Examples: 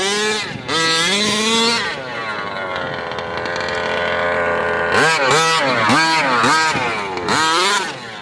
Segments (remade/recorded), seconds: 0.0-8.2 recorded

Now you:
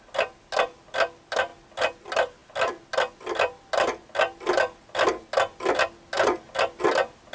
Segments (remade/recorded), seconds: 0.0-7.3 recorded